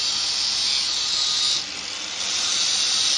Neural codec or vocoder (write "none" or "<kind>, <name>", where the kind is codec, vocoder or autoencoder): none